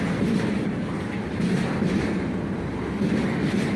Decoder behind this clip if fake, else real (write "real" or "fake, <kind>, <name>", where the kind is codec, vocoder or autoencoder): real